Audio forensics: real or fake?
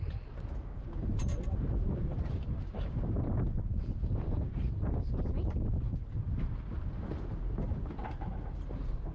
fake